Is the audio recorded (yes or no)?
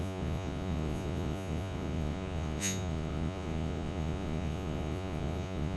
no